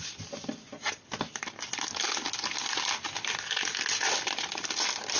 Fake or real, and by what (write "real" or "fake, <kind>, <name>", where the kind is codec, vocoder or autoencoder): real